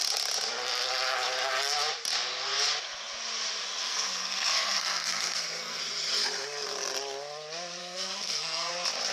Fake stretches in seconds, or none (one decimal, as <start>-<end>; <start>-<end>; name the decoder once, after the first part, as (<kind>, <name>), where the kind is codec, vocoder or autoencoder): 3.8-5.8 (codec, SNAC); 7.8-8.7